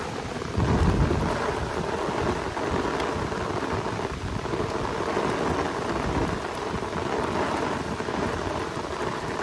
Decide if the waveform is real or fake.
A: real